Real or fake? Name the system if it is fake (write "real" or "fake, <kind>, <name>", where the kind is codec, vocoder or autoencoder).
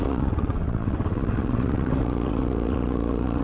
fake, vocoder, WaveNeXt